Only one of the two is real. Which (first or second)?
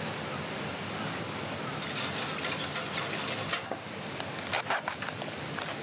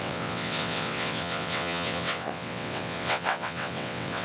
first